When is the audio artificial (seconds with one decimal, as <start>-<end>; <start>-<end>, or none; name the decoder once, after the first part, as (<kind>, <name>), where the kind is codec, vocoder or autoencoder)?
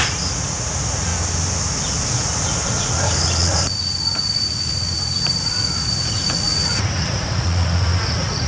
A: 0.0-1.1 (vocoder, Vocos); 2.1-8.5